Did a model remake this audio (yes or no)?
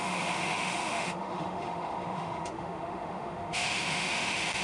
yes